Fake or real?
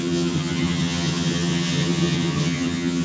fake